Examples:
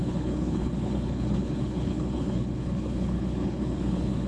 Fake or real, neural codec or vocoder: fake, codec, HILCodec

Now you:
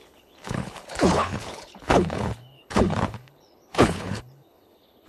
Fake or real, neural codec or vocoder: fake, codec, HILCodec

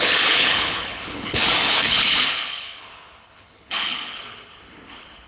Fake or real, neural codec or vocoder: fake, codec, HILCodec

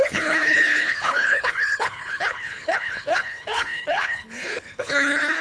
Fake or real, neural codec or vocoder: fake, codec, HILCodec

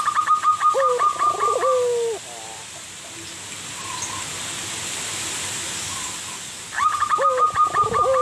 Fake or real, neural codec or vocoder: real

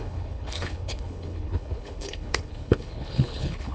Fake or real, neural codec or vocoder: fake, codec, HILCodec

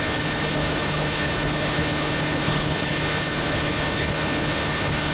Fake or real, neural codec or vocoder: fake, codec, HILCodec